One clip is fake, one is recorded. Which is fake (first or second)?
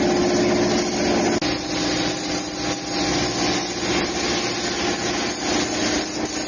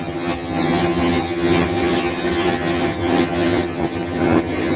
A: second